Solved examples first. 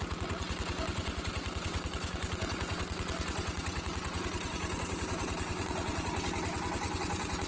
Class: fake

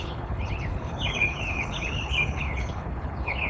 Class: fake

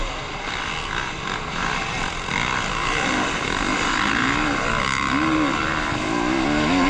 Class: real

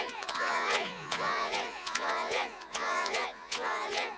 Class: fake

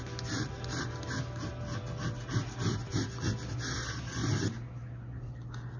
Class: real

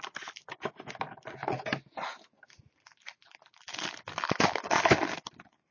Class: real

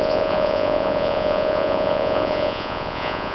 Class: fake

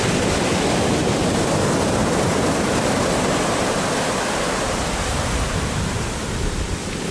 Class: real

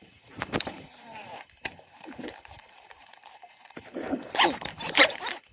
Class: fake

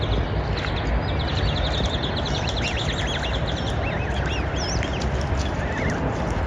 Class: real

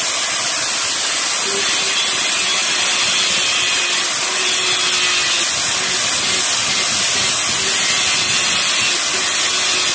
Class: real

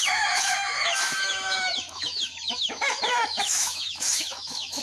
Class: fake